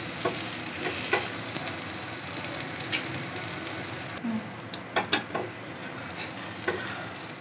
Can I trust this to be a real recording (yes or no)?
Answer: yes